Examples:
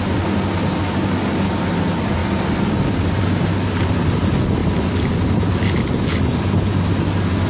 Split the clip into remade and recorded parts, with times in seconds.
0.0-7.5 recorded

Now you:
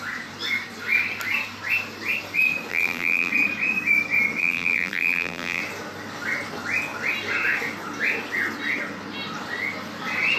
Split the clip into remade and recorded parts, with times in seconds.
0.0-2.7 recorded; 2.7-3.3 remade; 3.3-4.4 recorded; 4.4-5.6 remade; 5.6-10.4 recorded

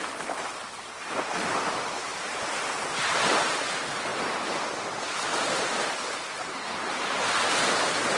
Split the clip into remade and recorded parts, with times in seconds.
0.0-2.1 recorded; 2.1-2.8 remade; 2.8-5.3 recorded; 5.3-7.2 remade; 7.2-8.2 recorded

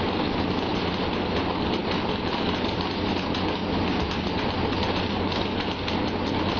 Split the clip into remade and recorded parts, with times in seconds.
0.0-6.6 recorded

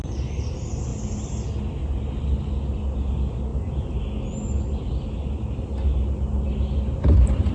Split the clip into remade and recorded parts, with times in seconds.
0.0-7.5 recorded

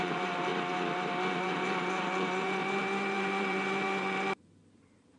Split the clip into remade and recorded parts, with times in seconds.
0.0-0.5 remade; 0.5-1.4 recorded; 1.4-5.2 remade

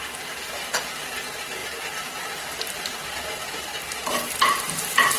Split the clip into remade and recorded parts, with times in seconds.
0.0-5.2 recorded

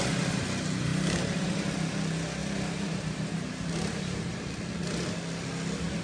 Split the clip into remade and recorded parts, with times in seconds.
0.0-2.4 recorded; 2.4-4.3 remade; 4.3-6.0 recorded